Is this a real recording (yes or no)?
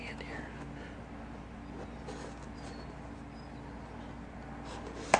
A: yes